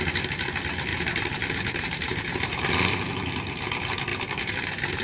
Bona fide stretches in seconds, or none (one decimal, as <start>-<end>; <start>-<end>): 0.0-0.9; 2.6-4.1